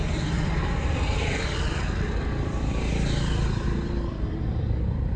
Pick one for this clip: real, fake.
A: fake